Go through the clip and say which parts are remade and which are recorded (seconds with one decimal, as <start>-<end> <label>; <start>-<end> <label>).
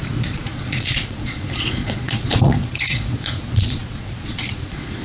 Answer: 0.0-5.0 remade